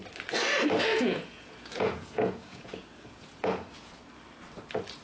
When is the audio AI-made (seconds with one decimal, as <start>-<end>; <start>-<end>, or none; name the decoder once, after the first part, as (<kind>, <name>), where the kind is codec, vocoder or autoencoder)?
0.9-3.9 (vocoder, Vocos)